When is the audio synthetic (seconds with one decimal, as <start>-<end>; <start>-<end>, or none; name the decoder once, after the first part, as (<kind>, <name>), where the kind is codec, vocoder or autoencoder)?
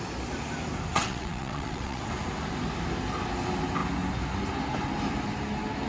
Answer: 0.9-2.0 (vocoder, WaveNeXt)